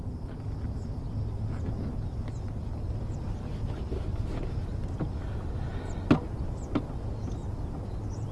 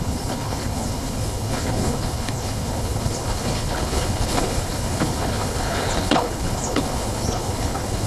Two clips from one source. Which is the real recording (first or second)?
first